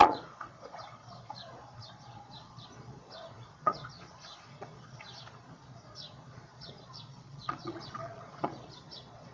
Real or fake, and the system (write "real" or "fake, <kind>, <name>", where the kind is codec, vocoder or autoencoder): fake, vocoder, Vocos